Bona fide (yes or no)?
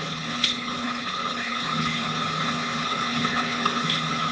no